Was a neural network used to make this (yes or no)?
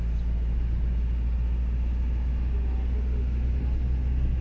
no